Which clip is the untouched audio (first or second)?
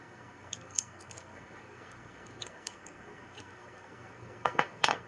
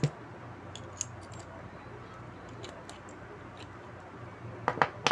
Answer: second